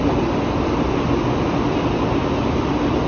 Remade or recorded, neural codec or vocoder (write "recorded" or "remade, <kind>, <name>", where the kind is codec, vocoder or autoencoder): recorded